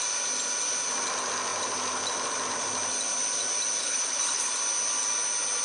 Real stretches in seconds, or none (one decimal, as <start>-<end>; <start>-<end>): 0.0-3.8; 4.5-5.6